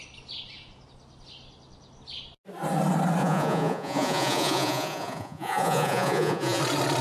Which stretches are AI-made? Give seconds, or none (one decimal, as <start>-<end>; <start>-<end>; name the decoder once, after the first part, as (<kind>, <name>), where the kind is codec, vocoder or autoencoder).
3.2-6.6 (vocoder, Vocos)

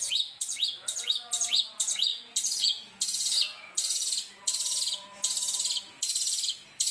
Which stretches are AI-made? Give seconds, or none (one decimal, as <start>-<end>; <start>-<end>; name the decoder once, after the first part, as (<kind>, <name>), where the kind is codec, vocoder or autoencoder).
0.0-6.9 (vocoder, Vocos)

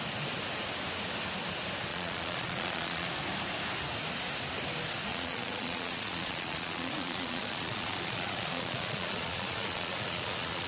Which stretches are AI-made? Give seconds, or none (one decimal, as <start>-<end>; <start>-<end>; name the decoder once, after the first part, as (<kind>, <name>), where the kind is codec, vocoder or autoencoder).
1.9-3.1 (vocoder, Vocos); 5.1-10.7

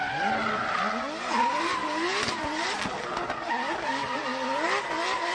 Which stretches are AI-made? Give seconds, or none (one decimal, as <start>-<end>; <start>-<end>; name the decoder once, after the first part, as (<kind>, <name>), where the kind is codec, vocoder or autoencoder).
none

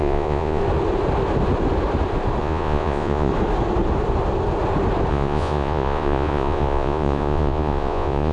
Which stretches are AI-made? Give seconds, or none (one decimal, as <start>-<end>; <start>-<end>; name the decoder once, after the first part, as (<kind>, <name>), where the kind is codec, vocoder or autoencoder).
0.0-0.6 (vocoder, Vocos); 2.4-3.3; 5.1-8.3

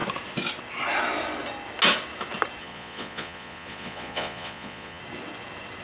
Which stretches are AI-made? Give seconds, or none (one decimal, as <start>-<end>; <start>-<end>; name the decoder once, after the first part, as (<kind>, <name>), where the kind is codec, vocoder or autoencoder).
2.6-5.0 (vocoder, Vocos)